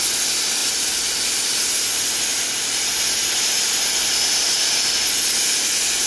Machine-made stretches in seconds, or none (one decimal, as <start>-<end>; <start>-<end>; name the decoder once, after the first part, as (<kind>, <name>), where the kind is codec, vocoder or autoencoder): none